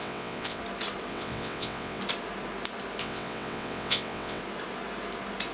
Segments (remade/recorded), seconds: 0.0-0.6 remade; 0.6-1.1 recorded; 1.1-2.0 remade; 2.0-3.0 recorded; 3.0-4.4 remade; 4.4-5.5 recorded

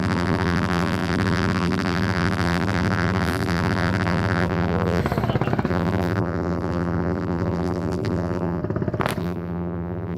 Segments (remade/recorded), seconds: 0.0-5.0 remade; 5.0-5.7 recorded; 5.7-8.6 remade; 8.6-9.2 recorded; 9.2-10.2 remade